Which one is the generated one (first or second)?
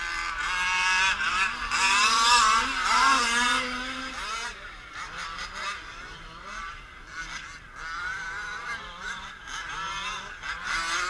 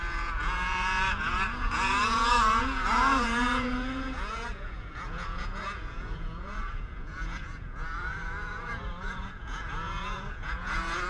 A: second